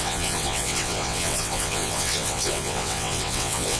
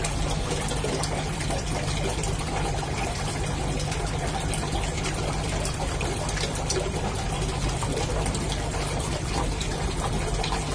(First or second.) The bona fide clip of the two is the second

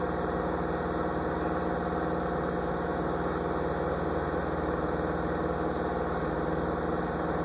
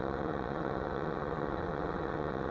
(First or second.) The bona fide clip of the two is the first